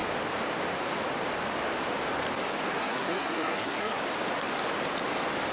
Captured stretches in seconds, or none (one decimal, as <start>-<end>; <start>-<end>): 0.0-2.8; 4.0-5.5